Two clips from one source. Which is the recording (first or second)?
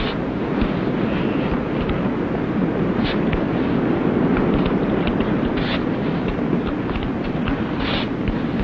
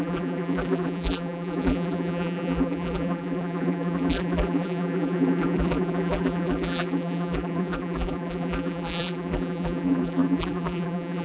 first